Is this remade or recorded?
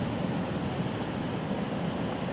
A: recorded